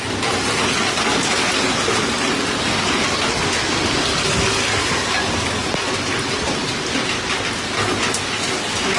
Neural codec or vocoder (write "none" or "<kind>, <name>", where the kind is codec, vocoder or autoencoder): none